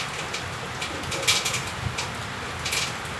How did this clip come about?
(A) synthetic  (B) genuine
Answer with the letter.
B